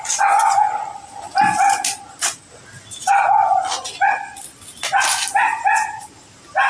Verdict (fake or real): real